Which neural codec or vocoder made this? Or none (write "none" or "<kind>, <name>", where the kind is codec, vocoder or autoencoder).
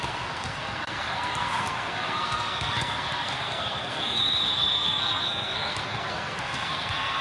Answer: codec, SNAC